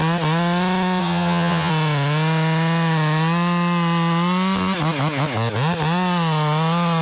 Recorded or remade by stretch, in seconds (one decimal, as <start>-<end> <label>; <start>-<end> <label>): 0.0-1.0 recorded; 1.0-1.7 remade; 1.7-7.0 recorded